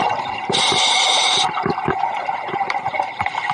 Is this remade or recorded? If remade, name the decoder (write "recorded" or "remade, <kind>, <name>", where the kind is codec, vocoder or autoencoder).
recorded